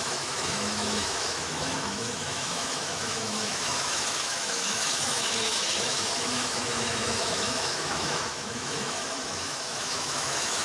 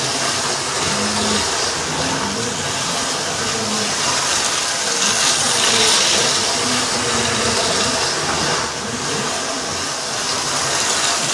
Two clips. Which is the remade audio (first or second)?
first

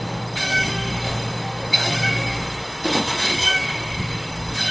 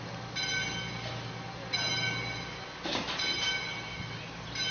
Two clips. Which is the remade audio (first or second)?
first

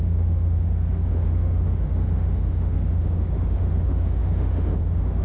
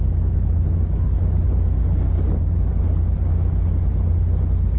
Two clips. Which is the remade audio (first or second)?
first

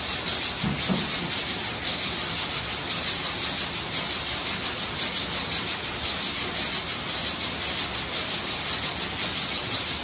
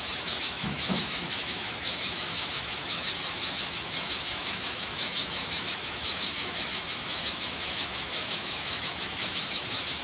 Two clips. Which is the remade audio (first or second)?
second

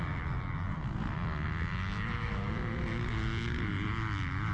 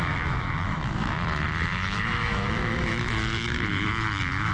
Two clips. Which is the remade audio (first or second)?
second